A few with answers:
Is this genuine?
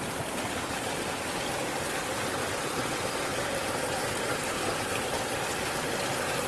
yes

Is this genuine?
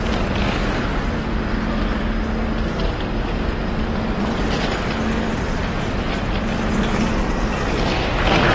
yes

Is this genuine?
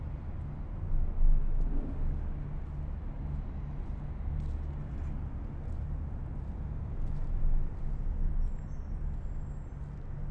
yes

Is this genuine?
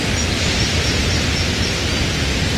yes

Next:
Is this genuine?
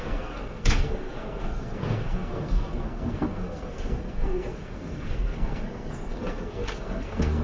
no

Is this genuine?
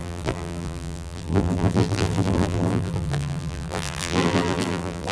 no